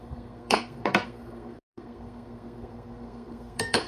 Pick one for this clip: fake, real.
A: fake